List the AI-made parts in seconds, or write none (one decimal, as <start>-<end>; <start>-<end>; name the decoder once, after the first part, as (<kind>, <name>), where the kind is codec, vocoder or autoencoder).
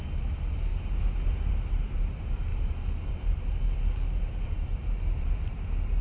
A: 0.0-6.0 (vocoder, BigVGAN v2)